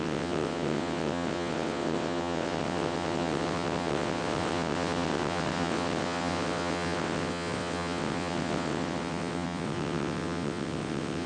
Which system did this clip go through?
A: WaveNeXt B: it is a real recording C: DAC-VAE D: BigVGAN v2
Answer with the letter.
A